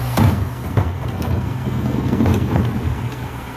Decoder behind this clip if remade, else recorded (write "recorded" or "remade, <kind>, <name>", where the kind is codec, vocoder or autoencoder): remade, codec, SNAC